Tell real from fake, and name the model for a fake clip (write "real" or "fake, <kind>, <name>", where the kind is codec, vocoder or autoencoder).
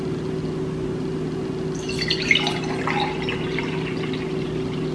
real